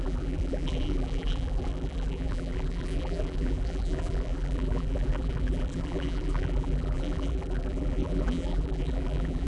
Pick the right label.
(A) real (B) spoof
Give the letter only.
B